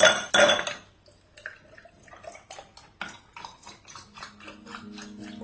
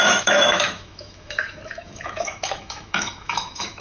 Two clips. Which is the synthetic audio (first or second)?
second